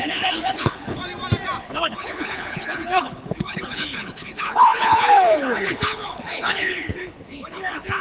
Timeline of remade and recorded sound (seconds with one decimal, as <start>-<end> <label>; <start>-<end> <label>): 0.0-1.0 remade; 1.0-1.6 recorded; 1.6-8.0 remade

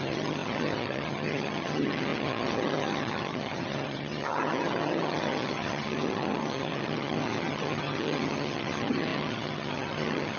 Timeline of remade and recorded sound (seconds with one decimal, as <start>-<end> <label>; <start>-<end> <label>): 0.0-10.4 remade

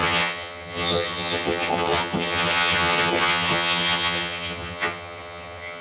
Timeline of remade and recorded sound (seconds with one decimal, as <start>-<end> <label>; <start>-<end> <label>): 0.0-5.8 remade

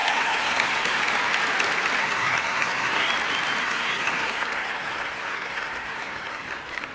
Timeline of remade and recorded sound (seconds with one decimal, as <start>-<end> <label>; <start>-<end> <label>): 0.0-1.0 remade; 1.0-2.0 recorded; 2.0-3.1 remade; 3.1-3.6 recorded; 3.6-6.9 remade

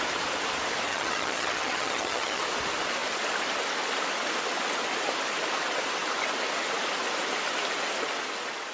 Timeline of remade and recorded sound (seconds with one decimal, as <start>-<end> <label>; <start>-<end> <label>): 0.0-0.9 recorded; 0.9-2.4 remade; 2.4-8.7 recorded